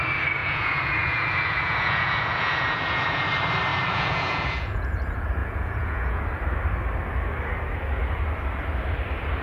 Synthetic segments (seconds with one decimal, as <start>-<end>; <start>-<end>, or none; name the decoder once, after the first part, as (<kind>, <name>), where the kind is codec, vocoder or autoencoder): 0.4-3.3 (vocoder, Vocos); 3.7-4.9; 5.4-6.2